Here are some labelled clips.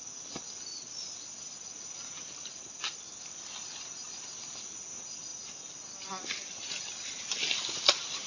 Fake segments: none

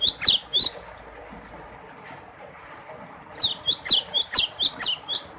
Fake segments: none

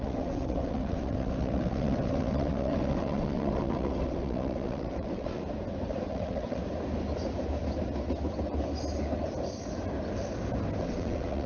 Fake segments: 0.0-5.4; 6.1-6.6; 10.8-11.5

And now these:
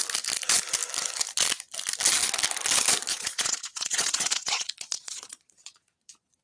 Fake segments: 3.1-6.4

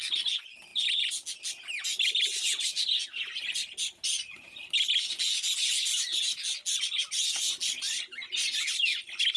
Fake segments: none

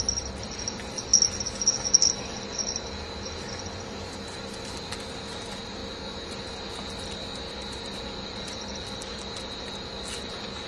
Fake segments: none

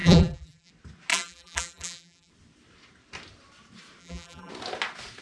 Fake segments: 0.0-0.7; 1.1-2.3; 4.0-4.5